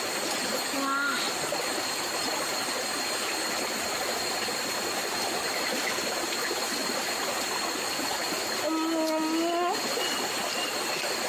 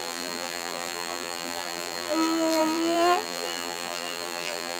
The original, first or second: first